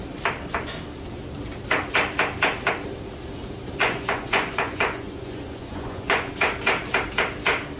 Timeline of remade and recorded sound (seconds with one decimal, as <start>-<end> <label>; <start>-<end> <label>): 0.0-3.8 recorded; 3.8-6.3 remade; 6.3-7.8 recorded